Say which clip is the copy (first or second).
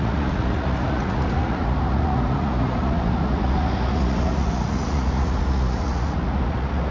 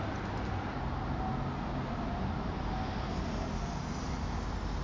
first